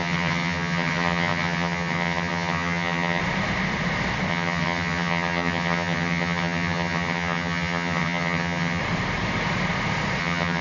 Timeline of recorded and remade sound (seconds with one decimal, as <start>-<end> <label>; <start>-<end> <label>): 0.0-3.2 remade; 3.2-4.3 recorded; 4.3-8.8 remade; 8.8-10.2 recorded; 10.2-10.6 remade